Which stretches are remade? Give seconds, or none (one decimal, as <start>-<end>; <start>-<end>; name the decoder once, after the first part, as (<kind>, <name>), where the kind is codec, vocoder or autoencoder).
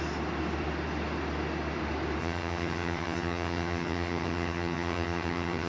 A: 2.2-5.7 (vocoder, HiFi-GAN)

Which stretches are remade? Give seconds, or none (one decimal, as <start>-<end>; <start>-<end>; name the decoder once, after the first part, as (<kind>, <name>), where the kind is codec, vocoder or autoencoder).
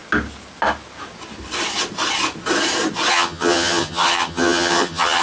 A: 3.1-5.2 (vocoder, HiFi-GAN)